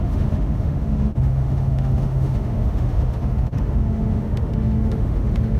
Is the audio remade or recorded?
remade